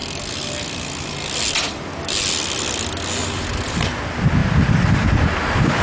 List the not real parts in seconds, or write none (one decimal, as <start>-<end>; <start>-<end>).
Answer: 3.2-3.9; 4.4-5.8